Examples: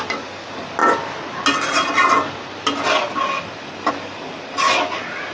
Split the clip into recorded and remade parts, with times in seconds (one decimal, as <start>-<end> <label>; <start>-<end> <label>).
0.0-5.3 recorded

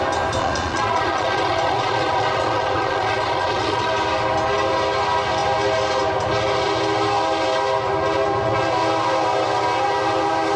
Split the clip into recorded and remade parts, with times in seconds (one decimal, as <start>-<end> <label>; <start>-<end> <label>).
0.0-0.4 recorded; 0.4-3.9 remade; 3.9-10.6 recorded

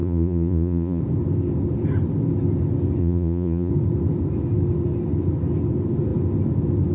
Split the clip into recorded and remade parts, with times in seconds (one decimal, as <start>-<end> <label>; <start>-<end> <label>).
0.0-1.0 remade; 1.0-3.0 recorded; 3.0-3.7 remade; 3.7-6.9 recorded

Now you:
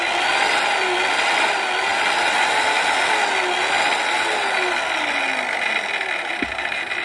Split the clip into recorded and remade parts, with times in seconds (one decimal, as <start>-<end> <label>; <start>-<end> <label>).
0.0-7.0 recorded

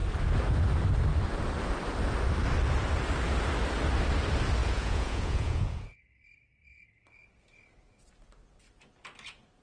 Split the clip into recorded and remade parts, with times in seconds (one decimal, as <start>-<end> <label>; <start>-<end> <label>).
0.0-4.6 recorded; 4.6-6.0 remade; 6.0-9.6 recorded